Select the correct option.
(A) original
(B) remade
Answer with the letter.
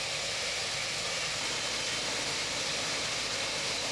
A